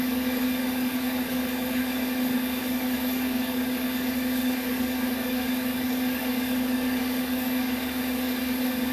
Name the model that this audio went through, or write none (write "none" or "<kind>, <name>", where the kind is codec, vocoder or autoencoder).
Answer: codec, DAC